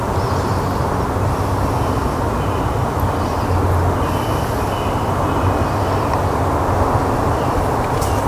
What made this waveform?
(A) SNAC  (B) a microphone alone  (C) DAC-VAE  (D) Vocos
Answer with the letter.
B